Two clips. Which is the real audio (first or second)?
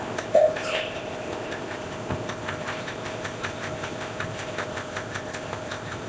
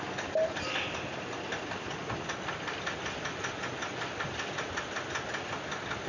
second